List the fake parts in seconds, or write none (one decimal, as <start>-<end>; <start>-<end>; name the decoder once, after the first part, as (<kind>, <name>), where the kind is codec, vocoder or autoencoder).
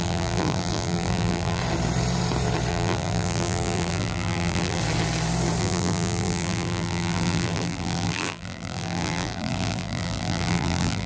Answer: 0.0-1.6 (vocoder, BigVGAN v2); 2.7-4.8; 5.6-11.1